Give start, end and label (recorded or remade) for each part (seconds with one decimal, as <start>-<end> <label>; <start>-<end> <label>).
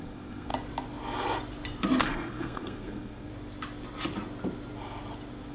0.0-0.5 remade; 0.5-2.0 recorded; 2.0-3.3 remade; 3.3-5.5 recorded